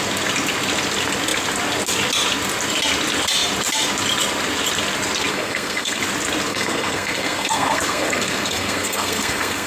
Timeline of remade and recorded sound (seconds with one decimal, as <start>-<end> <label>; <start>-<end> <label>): 0.0-5.3 recorded; 5.3-6.0 remade; 6.0-6.5 recorded; 6.5-9.7 remade